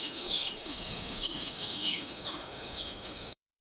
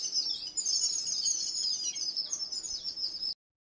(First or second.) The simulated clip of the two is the first